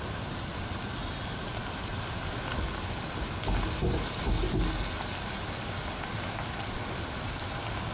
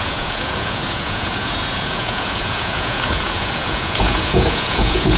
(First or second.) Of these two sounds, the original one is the first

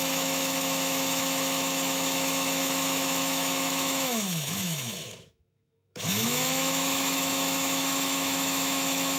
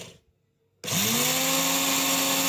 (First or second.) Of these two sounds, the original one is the second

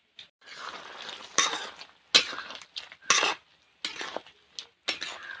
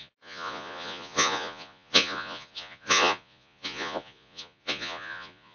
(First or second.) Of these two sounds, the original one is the first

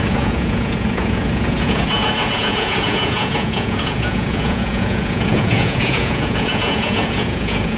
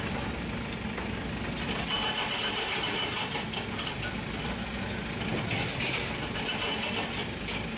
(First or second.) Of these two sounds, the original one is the second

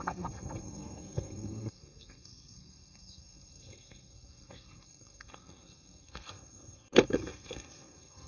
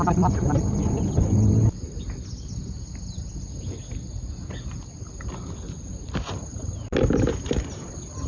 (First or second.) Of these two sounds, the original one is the second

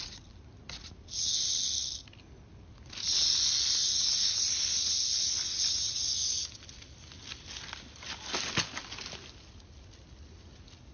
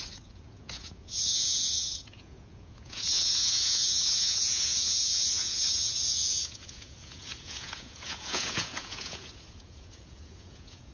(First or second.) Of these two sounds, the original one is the first